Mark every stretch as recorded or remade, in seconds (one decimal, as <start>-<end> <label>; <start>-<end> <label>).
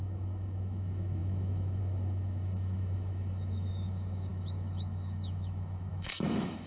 0.0-6.7 remade